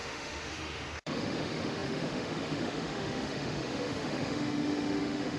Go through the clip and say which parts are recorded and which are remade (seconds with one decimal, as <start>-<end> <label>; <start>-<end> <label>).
0.0-5.4 remade